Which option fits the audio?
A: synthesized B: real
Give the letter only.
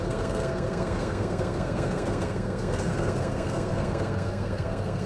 A